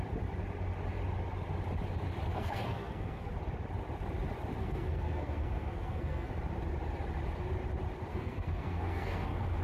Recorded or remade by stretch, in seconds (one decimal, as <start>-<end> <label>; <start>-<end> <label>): 0.0-2.3 recorded; 2.3-3.3 remade; 3.3-4.6 recorded; 4.6-6.3 remade; 6.3-8.1 recorded; 8.1-9.6 remade